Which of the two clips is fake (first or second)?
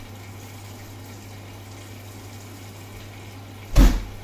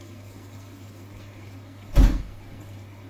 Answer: second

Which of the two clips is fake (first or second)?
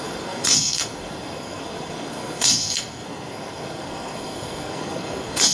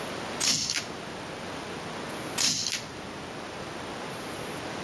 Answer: first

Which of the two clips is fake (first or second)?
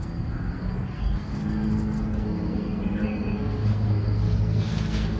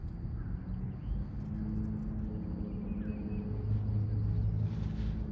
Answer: first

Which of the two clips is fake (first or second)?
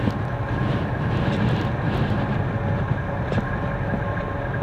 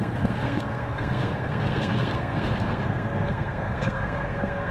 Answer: second